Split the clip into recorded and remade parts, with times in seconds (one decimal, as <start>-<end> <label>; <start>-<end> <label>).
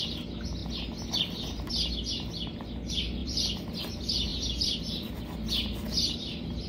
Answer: 0.0-3.2 recorded; 3.2-3.8 remade; 3.8-4.3 recorded; 4.3-4.8 remade; 4.8-6.7 recorded